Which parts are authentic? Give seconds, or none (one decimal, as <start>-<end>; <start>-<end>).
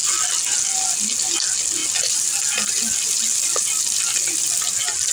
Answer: 0.0-5.1